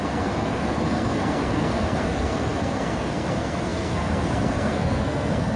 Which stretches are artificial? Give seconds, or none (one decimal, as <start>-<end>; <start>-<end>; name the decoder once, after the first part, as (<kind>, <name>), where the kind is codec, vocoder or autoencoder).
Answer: 0.0-5.6 (codec, SNAC)